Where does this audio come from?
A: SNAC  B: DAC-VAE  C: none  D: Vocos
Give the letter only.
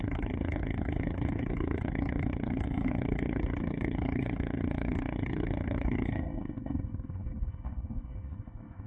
A